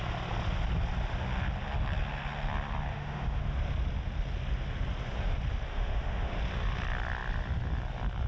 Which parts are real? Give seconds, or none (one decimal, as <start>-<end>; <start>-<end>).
0.0-2.9; 3.4-5.7; 6.4-8.3